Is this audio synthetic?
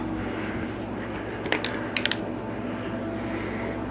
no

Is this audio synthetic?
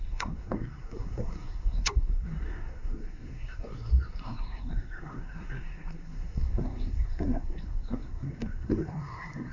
yes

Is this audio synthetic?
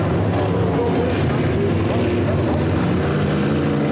no